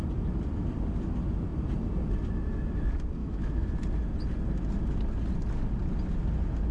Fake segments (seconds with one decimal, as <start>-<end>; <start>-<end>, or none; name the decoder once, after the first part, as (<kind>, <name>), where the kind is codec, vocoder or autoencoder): 3.2-3.7 (autoencoder, DAC-VAE)